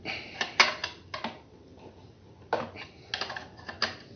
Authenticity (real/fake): real